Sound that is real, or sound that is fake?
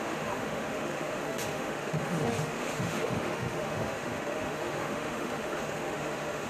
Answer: fake